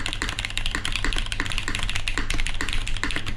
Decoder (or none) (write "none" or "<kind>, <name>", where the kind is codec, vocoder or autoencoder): none